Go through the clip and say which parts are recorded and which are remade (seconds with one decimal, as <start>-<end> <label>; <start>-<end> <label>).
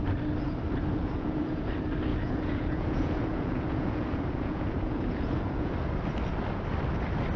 0.0-1.0 recorded; 1.0-1.7 remade; 1.7-2.1 recorded; 2.1-5.7 remade; 5.7-7.4 recorded